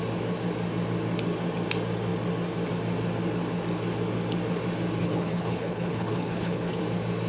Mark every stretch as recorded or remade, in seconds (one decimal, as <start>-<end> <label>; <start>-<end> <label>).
0.0-5.0 recorded; 5.0-6.8 remade; 6.8-7.3 recorded